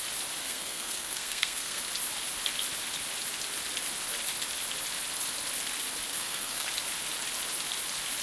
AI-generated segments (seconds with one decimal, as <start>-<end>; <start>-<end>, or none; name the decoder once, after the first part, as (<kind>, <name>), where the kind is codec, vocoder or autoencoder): 0.4-1.8 (codec, SNAC); 6.1-6.7